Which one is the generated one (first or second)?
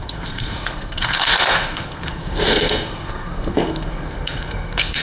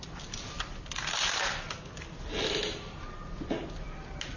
first